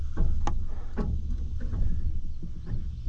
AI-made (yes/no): no